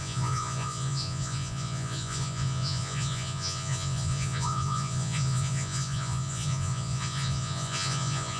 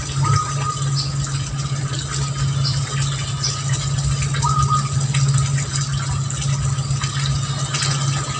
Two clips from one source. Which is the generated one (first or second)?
first